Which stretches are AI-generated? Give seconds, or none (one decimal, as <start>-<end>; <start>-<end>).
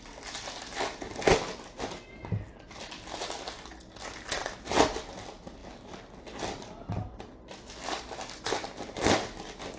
none